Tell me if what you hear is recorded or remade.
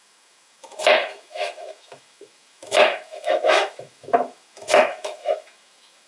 remade